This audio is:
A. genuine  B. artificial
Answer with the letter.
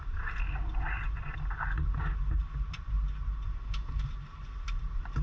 A